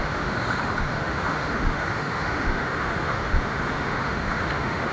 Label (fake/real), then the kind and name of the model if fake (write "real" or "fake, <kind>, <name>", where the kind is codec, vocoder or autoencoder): fake, autoencoder, DAC-VAE